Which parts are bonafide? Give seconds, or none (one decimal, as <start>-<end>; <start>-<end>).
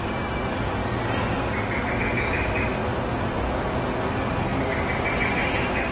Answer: 0.0-5.9